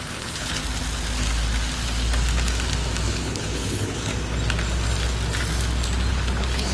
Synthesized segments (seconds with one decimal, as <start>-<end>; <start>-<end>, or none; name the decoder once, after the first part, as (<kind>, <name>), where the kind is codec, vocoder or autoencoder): 0.0-0.6 (codec, HILCodec); 3.1-4.1; 6.1-6.7